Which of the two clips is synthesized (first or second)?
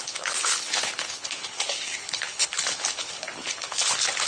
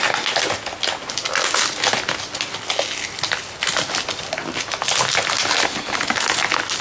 first